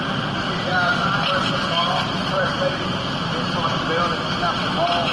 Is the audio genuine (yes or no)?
yes